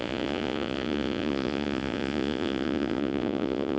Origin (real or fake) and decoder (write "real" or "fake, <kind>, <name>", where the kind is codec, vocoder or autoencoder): fake, vocoder, Vocos